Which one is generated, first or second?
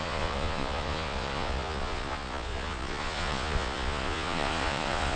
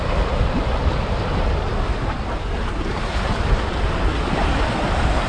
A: first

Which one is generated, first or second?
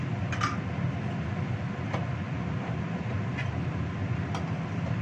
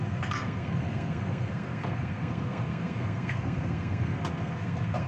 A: second